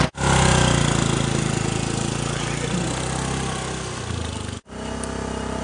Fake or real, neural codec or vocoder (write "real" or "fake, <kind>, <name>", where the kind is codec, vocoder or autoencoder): real